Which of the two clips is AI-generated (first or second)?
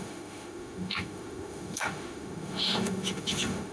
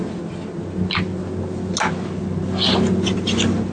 first